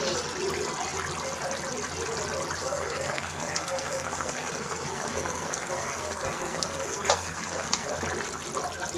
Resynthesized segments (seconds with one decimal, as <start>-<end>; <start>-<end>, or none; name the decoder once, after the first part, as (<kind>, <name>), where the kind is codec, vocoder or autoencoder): 2.6-7.9 (codec, SNAC)